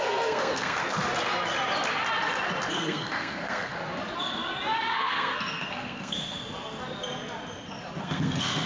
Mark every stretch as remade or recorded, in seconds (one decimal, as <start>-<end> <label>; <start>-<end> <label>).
0.0-0.8 remade; 0.8-2.7 recorded; 2.7-3.8 remade; 3.8-4.8 recorded; 4.8-6.4 remade; 6.4-8.0 recorded; 8.0-8.7 remade